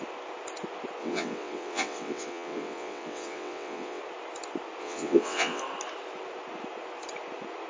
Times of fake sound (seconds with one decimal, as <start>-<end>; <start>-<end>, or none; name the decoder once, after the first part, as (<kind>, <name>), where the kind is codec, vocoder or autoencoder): 1.0-4.0 (vocoder, WaveNeXt); 4.8-5.6